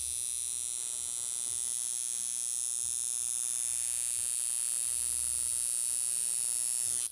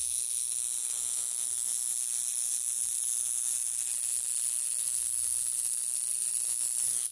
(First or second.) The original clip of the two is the first